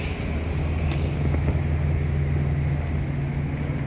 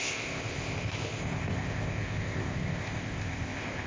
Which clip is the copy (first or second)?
second